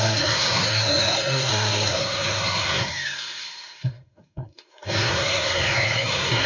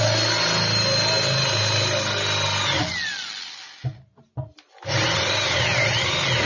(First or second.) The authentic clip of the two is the second